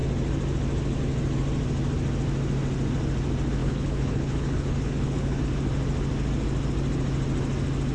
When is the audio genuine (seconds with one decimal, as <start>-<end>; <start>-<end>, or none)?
0.0-3.6; 5.4-7.9